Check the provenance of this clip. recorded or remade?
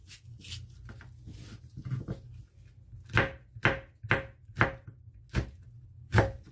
recorded